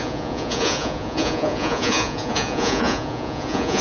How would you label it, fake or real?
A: fake